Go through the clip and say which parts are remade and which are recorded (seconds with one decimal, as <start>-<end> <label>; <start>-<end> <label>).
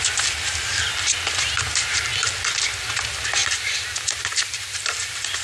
0.0-0.7 remade; 0.7-1.3 recorded; 1.3-2.1 remade; 2.1-2.8 recorded; 2.8-3.4 remade; 3.4-4.0 recorded; 4.0-5.4 remade